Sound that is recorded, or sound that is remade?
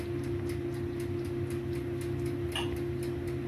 recorded